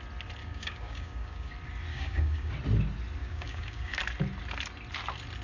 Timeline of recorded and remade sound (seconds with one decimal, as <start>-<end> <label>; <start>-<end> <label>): 0.0-0.4 recorded; 0.4-1.5 remade; 1.5-1.9 recorded; 1.9-2.5 remade; 2.5-3.2 recorded; 3.2-4.0 remade; 4.0-5.4 recorded